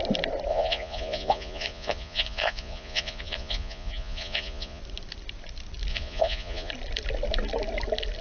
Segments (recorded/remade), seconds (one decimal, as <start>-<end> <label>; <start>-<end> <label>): 0.0-0.5 recorded; 0.5-4.8 remade; 4.8-5.9 recorded; 5.9-6.7 remade; 6.7-8.2 recorded